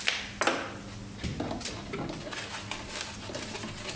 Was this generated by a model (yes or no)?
no